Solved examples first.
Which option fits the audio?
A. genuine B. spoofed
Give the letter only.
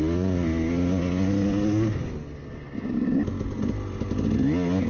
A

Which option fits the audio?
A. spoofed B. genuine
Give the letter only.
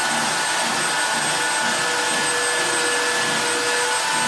B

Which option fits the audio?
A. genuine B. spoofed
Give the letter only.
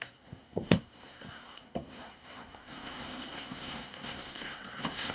B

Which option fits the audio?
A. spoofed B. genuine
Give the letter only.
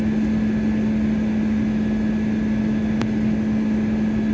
B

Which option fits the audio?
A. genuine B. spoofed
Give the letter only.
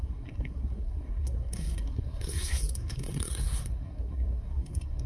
B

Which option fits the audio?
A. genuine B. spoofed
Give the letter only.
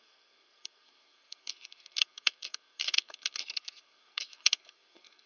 B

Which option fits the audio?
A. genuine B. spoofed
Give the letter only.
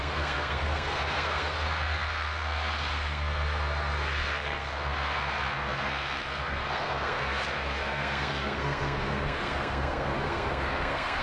B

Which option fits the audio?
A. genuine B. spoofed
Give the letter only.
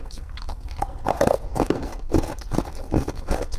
B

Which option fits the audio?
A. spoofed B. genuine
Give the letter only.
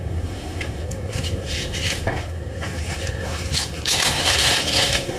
A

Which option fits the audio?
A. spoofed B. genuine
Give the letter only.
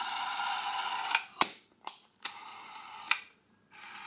B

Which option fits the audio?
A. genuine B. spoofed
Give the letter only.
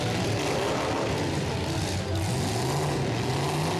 A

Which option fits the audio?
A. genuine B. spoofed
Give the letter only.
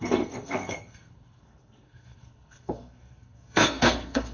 B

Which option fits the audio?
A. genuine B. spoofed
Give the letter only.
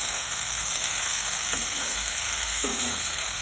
B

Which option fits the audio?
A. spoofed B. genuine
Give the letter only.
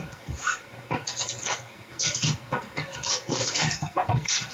A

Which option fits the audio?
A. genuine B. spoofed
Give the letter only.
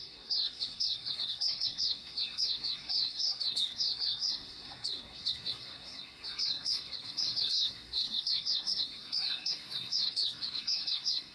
B